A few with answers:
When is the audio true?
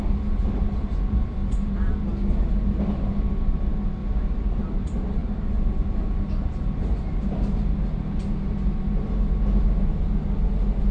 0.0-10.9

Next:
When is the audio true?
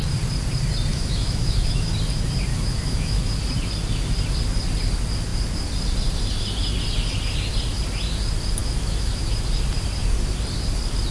0.0-0.9; 1.9-2.5; 3.2-8.6; 9.4-11.1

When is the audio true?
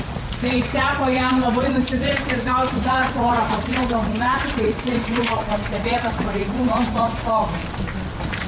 7.6-8.5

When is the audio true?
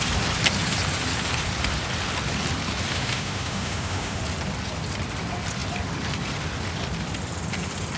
0.0-2.9; 4.2-8.0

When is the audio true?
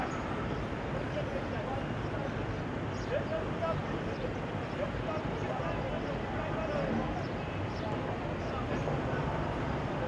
0.0-3.8; 5.9-10.1